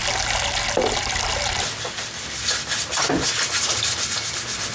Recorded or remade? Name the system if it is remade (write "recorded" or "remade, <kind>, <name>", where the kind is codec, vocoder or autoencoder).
recorded